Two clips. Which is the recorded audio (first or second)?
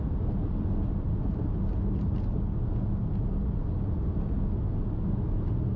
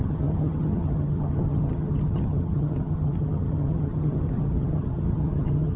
first